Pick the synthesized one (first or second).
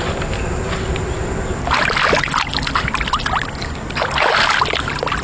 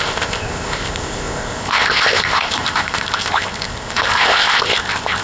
second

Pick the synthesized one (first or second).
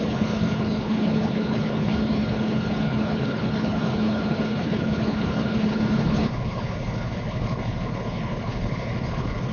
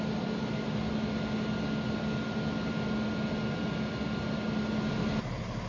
first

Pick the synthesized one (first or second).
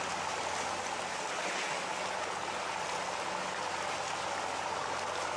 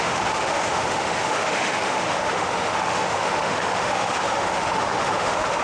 second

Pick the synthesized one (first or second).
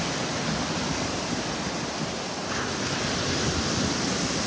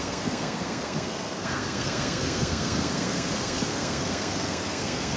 second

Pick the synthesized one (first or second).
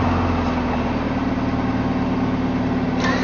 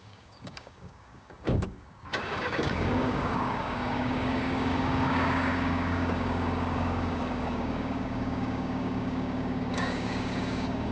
second